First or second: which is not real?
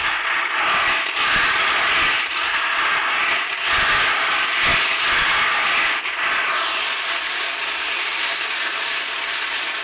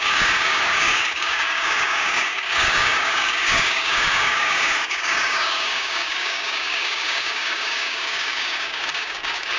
second